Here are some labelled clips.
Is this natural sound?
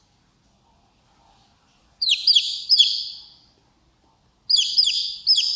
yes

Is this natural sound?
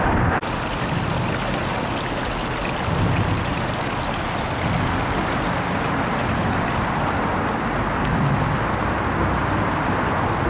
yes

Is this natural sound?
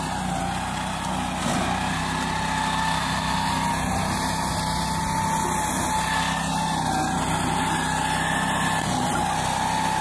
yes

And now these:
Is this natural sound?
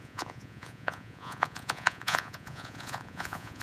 no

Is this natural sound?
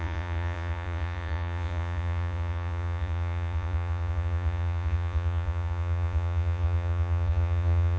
no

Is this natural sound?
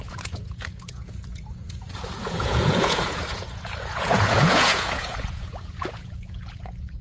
no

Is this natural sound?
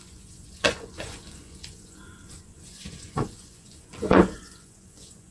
no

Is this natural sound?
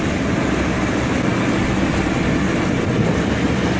yes